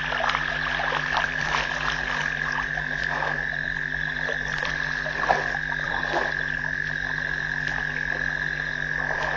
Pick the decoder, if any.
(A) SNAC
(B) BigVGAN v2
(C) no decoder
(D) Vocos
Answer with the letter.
B